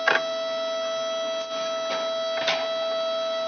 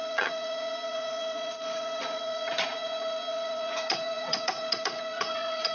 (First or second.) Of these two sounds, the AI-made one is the second